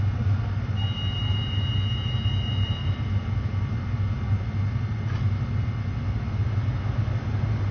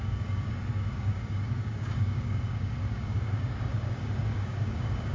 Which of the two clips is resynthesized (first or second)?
second